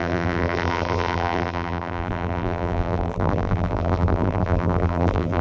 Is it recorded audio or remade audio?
remade